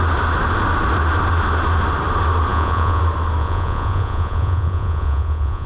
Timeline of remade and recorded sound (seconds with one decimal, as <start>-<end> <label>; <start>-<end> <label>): 0.0-2.5 recorded; 2.5-3.0 remade; 3.0-3.4 recorded; 3.4-5.7 remade